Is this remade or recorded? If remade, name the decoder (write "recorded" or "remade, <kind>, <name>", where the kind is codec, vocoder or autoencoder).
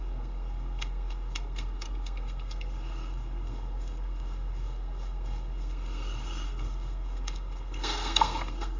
remade, codec, SNAC